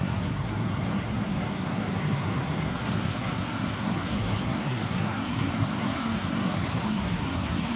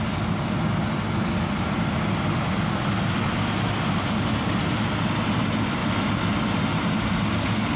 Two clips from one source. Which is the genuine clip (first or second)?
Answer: second